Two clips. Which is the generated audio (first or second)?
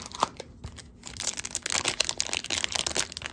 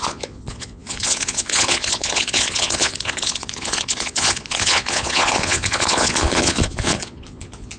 second